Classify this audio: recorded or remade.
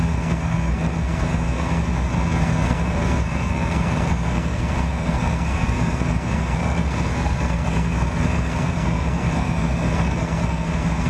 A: remade